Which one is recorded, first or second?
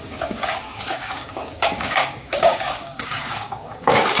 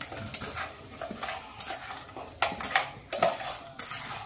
second